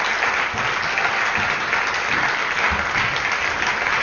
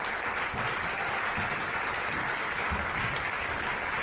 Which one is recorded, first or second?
first